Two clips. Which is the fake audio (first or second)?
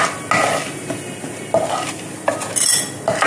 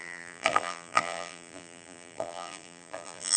second